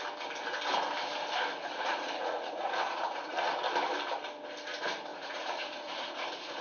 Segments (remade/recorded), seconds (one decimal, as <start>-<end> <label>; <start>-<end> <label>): 0.0-1.5 recorded; 1.5-3.5 remade; 3.5-5.1 recorded; 5.1-6.6 remade